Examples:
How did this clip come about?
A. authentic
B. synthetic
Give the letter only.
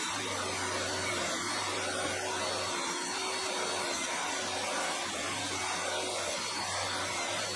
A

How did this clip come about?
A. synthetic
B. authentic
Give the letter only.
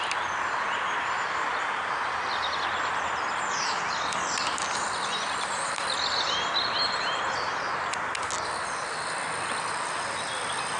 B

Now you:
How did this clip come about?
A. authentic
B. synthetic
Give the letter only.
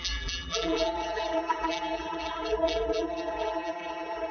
B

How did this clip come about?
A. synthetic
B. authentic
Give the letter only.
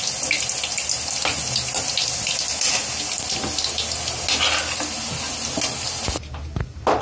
B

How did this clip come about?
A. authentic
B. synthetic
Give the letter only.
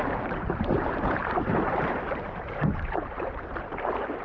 B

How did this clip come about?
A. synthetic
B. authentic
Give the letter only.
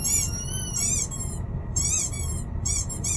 A